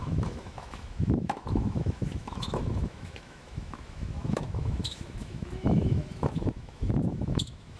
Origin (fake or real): fake